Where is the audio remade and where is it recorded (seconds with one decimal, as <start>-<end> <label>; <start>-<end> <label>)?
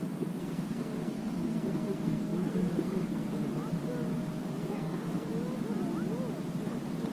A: 0.0-3.4 remade; 3.4-4.6 recorded; 4.6-5.3 remade; 5.3-7.1 recorded